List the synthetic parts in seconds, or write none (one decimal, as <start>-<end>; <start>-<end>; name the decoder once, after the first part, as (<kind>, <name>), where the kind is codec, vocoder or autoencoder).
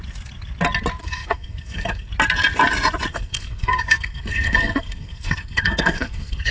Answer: 1.0-2.1 (codec, SNAC); 3.1-6.5